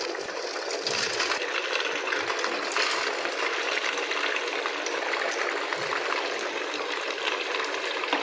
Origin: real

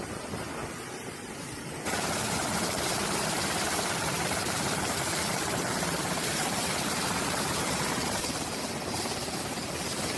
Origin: fake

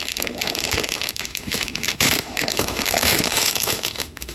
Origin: fake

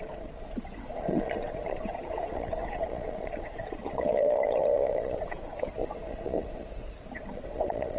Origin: fake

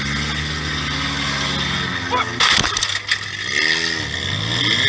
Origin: real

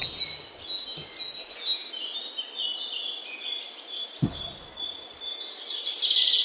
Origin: real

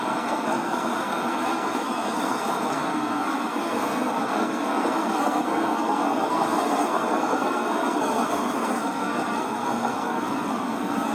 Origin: fake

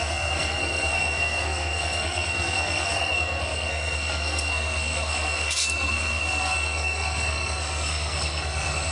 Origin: fake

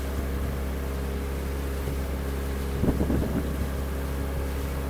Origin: real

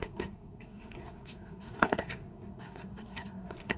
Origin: fake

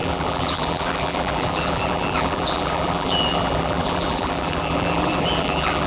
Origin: fake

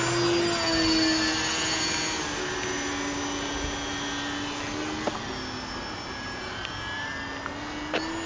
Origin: real